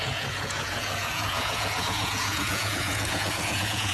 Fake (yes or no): yes